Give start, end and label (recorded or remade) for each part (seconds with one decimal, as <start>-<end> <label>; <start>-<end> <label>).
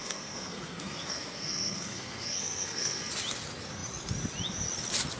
0.0-3.1 remade; 3.1-5.2 recorded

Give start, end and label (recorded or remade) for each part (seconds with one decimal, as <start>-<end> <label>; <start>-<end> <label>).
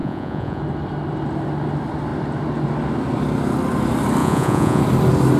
0.0-0.6 remade; 0.6-4.2 recorded; 4.2-4.8 remade; 4.8-5.4 recorded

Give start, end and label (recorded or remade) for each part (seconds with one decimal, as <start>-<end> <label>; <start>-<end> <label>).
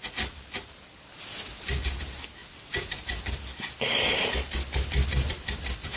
0.0-6.0 recorded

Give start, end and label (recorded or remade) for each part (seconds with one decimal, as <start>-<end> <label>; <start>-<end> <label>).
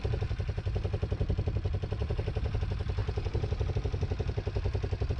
0.0-2.0 recorded; 2.0-2.6 remade; 2.6-3.0 recorded; 3.0-3.7 remade; 3.7-5.2 recorded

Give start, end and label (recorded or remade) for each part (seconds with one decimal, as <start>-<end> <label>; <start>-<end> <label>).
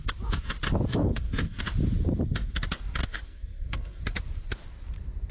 0.0-1.0 recorded; 1.0-1.6 remade; 1.6-3.0 recorded; 3.0-4.0 remade; 4.0-5.3 recorded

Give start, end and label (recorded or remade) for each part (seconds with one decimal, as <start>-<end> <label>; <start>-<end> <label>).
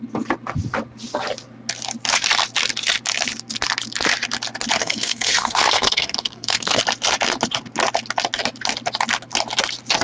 0.0-4.8 recorded; 4.8-6.8 remade; 6.8-10.0 recorded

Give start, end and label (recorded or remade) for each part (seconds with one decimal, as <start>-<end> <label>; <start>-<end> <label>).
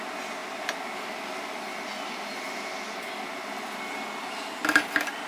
0.0-5.3 recorded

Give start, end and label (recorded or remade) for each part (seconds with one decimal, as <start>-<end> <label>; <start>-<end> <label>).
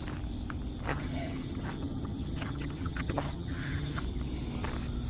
0.0-0.9 recorded; 0.9-4.0 remade; 4.0-5.1 recorded